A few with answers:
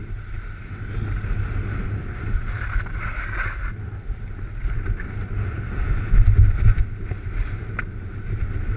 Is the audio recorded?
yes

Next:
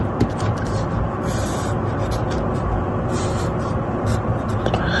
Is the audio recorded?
yes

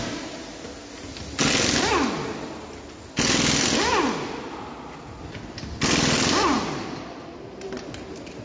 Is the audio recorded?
yes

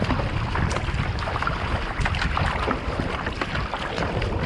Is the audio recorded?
yes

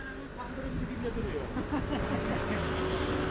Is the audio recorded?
yes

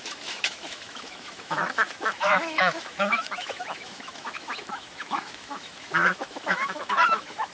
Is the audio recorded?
no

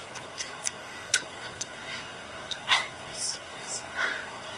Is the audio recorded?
no